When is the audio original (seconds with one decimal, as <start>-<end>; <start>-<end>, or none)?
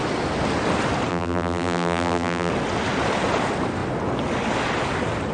0.0-1.1; 2.5-5.3